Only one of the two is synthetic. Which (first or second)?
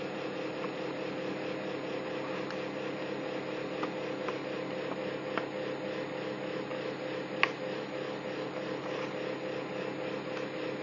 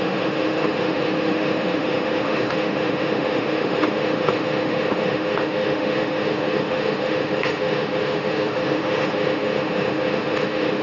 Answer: second